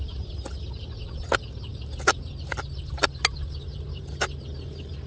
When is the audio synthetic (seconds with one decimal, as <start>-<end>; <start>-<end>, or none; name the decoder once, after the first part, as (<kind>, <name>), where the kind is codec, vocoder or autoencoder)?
none

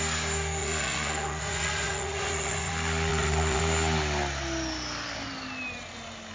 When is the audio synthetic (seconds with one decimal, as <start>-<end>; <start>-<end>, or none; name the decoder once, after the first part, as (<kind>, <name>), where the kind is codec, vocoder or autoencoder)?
0.6-2.7 (vocoder, Vocos); 3.1-3.6

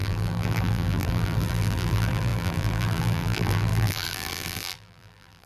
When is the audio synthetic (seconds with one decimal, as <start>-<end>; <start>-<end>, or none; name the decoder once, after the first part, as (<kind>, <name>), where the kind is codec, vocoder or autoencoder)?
0.0-5.5 (vocoder, BigVGAN v2)

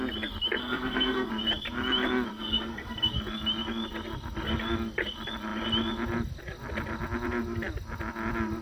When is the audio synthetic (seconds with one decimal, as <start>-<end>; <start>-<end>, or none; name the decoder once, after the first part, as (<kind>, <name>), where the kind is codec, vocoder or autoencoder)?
0.6-1.3 (codec, SNAC); 2.3-3.1